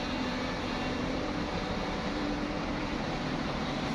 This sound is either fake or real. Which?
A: fake